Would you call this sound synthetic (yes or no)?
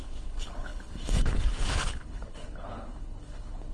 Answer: yes